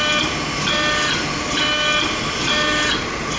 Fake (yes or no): no